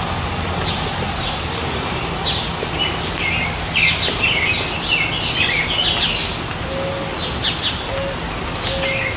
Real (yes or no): yes